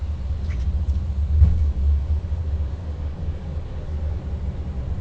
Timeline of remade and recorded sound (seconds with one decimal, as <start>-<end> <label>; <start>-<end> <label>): 0.0-1.2 recorded; 1.2-4.2 remade; 4.2-5.0 recorded